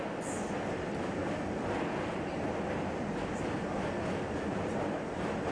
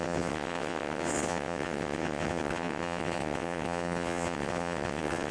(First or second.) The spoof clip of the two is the second